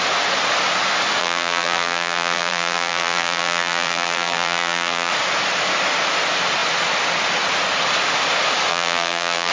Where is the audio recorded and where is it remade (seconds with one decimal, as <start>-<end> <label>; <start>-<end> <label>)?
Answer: 0.0-1.2 recorded; 1.2-5.1 remade; 5.1-8.7 recorded; 8.7-9.5 remade